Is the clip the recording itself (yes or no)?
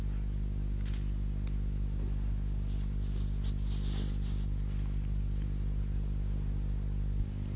yes